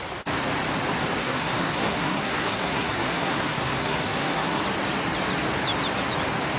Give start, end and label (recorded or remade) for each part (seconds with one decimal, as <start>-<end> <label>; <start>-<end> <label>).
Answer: 0.0-1.2 recorded; 1.2-4.6 remade; 4.6-6.6 recorded